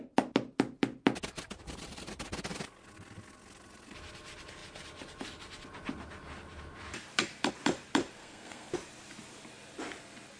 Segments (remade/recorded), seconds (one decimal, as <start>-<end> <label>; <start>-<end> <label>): 0.0-8.2 recorded; 8.2-8.7 remade; 8.7-10.4 recorded